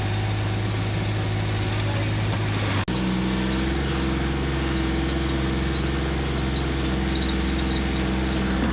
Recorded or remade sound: recorded